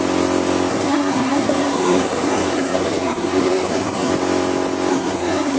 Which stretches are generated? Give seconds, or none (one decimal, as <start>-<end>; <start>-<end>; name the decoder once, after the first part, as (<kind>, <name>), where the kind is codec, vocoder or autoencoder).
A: 0.7-4.1 (codec, SNAC); 4.9-5.6